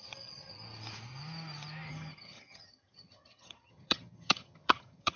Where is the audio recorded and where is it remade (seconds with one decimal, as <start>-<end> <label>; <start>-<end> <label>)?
0.0-1.9 recorded; 1.9-5.2 remade